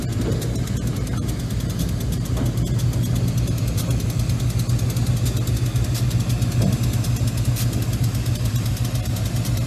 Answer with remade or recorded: recorded